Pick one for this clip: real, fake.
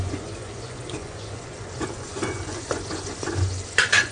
fake